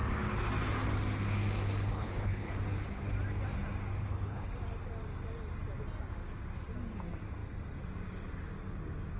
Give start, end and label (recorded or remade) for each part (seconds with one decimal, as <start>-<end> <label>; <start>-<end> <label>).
0.0-1.9 recorded; 1.9-2.5 remade; 2.5-4.0 recorded; 4.0-4.5 remade; 4.5-9.2 recorded